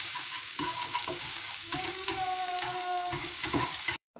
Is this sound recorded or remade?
remade